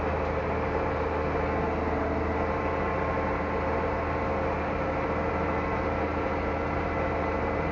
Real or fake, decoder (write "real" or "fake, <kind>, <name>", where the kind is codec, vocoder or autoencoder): real